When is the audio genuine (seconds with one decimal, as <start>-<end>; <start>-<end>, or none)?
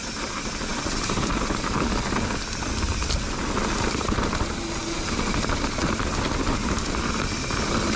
0.0-8.0